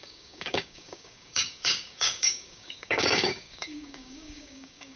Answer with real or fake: fake